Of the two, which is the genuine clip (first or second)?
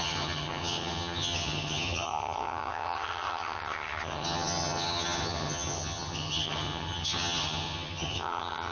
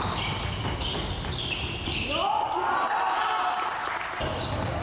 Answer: second